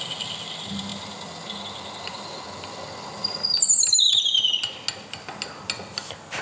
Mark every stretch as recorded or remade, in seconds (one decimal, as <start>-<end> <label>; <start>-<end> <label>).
0.0-6.4 recorded